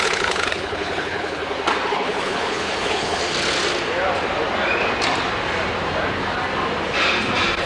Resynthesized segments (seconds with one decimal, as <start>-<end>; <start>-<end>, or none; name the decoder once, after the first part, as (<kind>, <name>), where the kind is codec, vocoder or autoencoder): 0.0-1.4 (codec, HILCodec); 1.9-3.2